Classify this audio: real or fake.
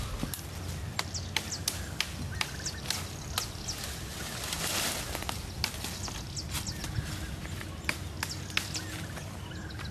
real